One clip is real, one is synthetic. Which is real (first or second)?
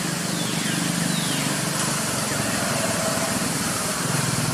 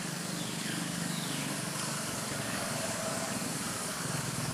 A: first